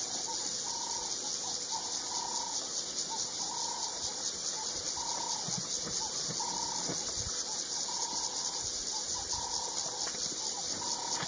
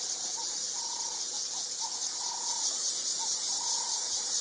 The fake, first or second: second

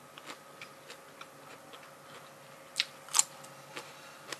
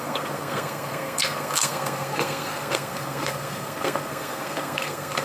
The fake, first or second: second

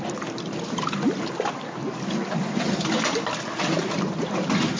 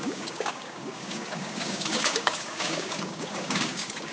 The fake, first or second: second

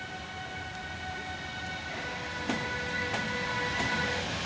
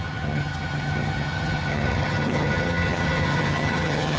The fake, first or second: second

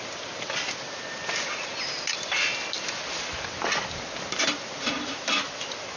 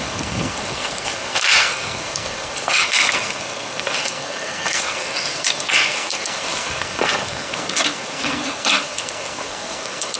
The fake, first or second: second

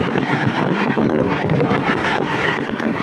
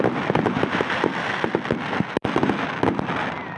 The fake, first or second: first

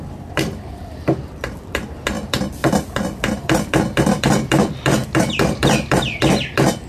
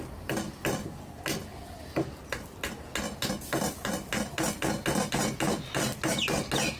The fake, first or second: first